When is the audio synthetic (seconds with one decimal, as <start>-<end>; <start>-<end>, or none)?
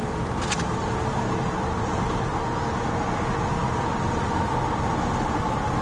none